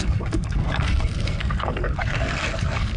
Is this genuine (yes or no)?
no